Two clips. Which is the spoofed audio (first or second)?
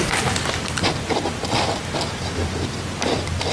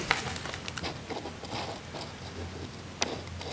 first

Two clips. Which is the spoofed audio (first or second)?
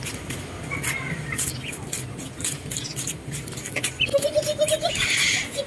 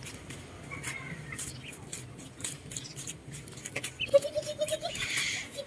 second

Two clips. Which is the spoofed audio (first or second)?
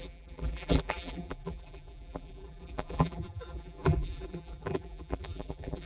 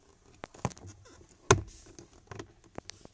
first